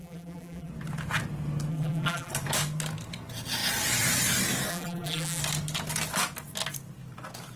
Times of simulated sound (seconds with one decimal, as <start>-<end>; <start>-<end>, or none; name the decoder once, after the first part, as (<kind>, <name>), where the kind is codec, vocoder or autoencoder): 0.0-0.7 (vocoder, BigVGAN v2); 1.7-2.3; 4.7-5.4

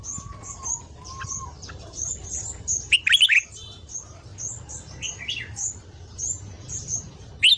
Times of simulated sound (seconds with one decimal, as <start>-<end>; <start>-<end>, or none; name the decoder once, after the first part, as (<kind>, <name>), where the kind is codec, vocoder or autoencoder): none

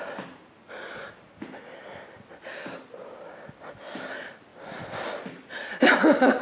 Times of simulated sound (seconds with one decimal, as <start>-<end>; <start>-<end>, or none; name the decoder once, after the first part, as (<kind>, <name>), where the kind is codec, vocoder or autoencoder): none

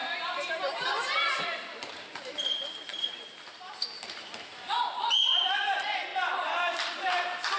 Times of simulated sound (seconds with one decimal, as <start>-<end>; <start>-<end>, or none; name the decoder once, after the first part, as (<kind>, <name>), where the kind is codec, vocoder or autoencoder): 0.0-6.1 (vocoder, BigVGAN v2); 7.0-7.6

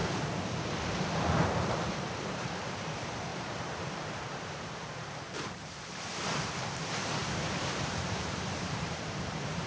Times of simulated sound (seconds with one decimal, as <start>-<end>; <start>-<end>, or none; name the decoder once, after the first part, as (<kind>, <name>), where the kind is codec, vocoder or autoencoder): 1.9-7.2 (vocoder, BigVGAN v2); 7.9-9.7

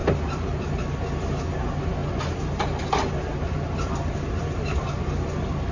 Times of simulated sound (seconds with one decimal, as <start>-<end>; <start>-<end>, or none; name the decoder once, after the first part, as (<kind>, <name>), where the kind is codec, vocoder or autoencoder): 0.0-0.6 (vocoder, BigVGAN v2)

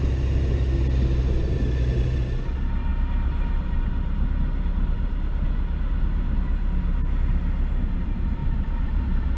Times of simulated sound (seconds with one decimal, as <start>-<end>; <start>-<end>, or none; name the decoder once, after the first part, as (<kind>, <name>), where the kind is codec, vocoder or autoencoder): 8.4-9.0 (vocoder, BigVGAN v2)

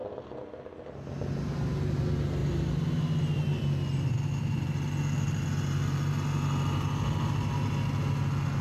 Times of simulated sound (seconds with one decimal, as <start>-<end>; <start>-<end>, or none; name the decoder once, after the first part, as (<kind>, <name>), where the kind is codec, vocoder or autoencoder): none